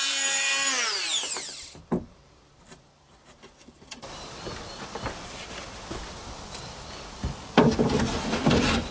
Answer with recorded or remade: remade